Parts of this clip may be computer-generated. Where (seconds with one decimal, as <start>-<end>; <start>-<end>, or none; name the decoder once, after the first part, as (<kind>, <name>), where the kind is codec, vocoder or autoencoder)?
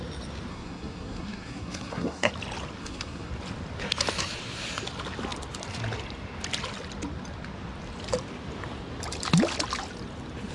0.5-2.3 (codec, SNAC); 2.8-3.3